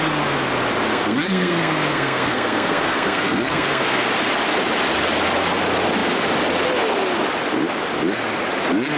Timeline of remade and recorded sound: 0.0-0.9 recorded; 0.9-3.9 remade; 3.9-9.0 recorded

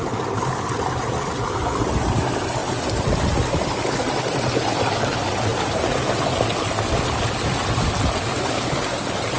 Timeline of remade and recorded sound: 0.0-9.4 recorded

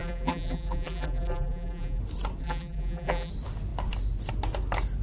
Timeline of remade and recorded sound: 0.0-2.0 remade; 2.0-2.4 recorded; 2.4-3.3 remade; 3.3-5.0 recorded

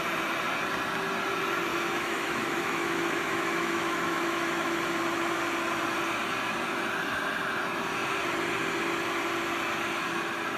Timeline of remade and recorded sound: 0.0-1.7 recorded; 1.7-4.8 remade; 4.8-10.6 recorded